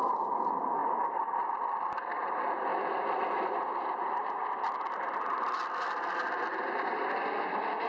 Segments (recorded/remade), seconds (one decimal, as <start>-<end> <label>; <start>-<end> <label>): 0.0-0.8 recorded; 0.8-1.9 remade; 1.9-2.7 recorded; 2.7-7.4 remade; 7.4-7.9 recorded